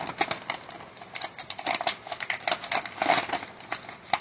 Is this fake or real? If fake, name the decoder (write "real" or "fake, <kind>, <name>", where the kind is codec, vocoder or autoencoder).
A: real